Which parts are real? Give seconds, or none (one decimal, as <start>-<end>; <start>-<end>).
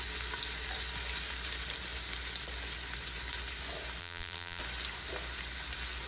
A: 0.0-4.0; 4.6-6.1